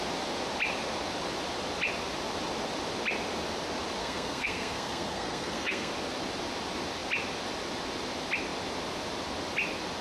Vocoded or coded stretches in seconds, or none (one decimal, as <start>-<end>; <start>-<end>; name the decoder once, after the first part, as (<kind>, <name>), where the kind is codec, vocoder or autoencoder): 4.0-5.9 (codec, SNAC)